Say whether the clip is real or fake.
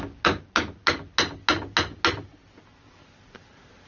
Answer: real